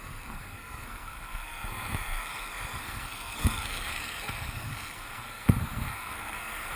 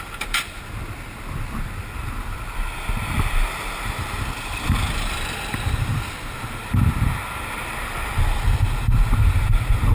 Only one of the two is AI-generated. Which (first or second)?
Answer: first